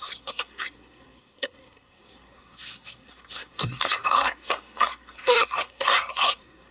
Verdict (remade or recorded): remade